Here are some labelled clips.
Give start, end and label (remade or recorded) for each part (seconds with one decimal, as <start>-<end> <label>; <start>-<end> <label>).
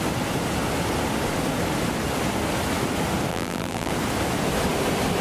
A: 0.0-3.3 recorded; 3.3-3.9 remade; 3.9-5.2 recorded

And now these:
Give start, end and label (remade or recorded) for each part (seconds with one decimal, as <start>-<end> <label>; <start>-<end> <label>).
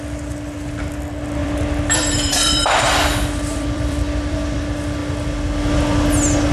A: 0.0-1.4 recorded; 1.4-4.6 remade; 4.6-6.5 recorded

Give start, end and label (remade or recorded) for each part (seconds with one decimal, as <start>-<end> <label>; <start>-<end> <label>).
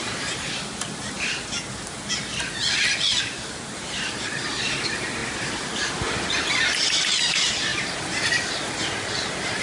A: 0.0-3.1 recorded; 3.1-4.5 remade; 4.5-7.7 recorded; 7.7-9.6 remade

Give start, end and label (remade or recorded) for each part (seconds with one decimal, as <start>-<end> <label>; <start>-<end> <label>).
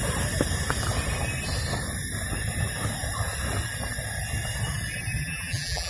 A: 0.0-5.2 recorded; 5.2-5.9 remade